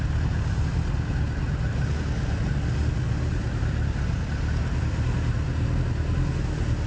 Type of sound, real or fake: real